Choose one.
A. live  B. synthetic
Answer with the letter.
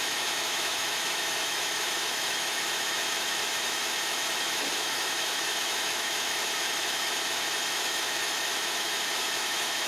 B